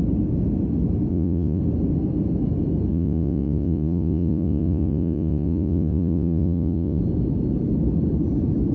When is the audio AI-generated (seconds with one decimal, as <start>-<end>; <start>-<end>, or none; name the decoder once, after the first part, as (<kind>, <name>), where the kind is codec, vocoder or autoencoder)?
1.1-1.6 (vocoder, Vocos); 2.9-7.0